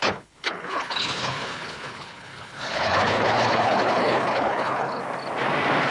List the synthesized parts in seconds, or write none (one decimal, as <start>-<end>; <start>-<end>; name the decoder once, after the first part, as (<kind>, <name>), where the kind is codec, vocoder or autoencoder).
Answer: 0.0-5.0 (codec, HILCodec)